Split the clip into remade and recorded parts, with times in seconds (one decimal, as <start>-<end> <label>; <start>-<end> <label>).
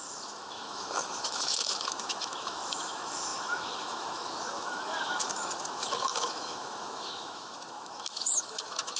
0.0-9.0 remade